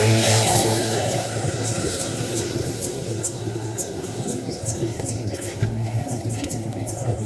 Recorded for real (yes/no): no